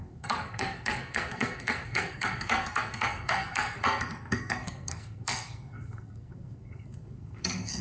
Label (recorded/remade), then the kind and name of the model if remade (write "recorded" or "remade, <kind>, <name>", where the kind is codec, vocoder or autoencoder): remade, codec, SNAC